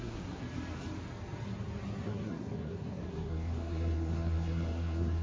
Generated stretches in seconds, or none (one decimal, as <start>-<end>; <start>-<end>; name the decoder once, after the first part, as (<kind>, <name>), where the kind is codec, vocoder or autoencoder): 0.0-0.4 (codec, SNAC); 2.0-5.2